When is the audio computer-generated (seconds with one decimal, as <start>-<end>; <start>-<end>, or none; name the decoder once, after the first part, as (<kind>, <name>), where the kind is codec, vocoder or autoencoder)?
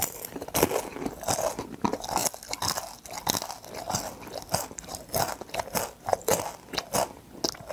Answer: none